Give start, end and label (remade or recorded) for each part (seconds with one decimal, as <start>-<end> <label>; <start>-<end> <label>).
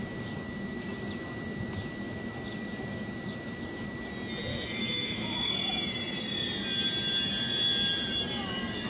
0.0-4.5 recorded; 4.5-5.5 remade; 5.5-8.9 recorded